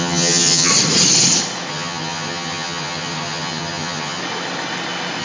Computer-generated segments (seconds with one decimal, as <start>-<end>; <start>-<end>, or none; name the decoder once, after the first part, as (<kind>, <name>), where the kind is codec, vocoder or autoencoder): 0.0-0.7 (vocoder, HiFi-GAN); 1.7-4.2